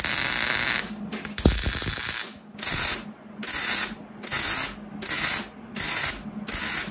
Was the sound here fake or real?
real